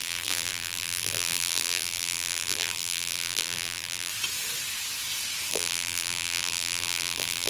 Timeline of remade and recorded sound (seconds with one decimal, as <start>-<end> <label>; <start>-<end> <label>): 0.0-4.1 remade; 4.1-5.5 recorded; 5.5-7.5 remade